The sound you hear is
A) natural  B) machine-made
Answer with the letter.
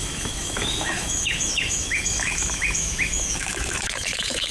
B